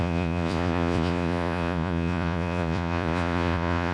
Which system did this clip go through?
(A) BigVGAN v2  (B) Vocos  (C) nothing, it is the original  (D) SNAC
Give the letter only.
B